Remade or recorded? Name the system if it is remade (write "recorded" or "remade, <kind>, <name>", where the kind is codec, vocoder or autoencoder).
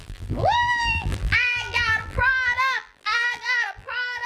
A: remade, vocoder, BigVGAN v2